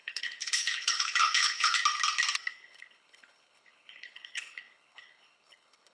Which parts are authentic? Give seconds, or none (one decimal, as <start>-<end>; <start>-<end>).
1.8-2.5